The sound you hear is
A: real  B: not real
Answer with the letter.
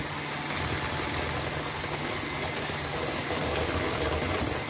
A